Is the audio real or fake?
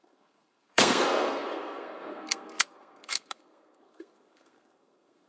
fake